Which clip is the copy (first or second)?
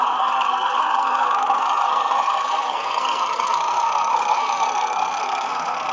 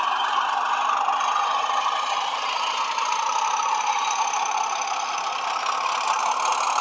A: first